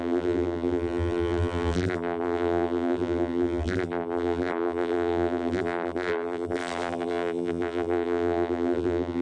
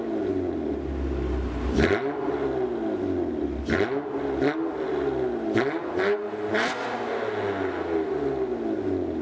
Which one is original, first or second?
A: second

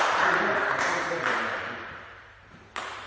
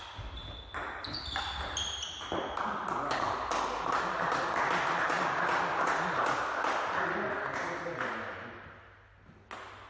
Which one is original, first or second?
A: second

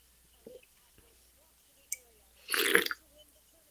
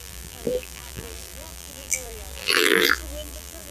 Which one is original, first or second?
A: first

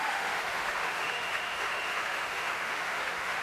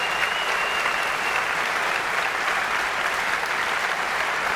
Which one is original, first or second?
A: second